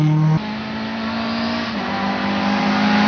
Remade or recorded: recorded